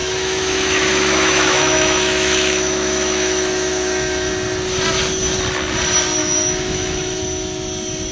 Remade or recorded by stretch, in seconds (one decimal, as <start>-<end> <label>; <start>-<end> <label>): 0.0-4.3 remade; 4.3-6.2 recorded; 6.2-7.2 remade; 7.2-8.1 recorded